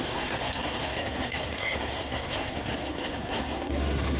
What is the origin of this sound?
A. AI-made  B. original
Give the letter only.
A